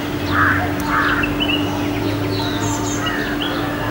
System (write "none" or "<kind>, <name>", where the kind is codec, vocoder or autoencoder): none